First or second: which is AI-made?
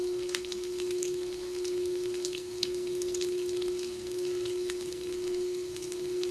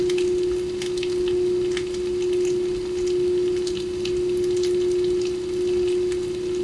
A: first